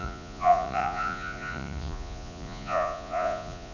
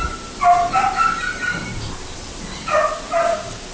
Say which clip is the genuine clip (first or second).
second